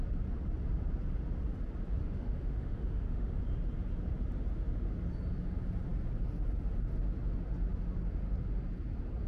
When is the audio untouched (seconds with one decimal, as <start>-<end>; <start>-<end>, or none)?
0.0-2.0; 3.4-9.3